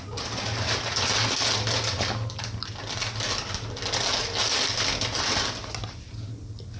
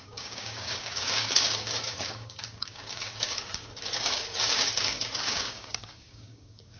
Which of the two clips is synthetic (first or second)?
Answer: second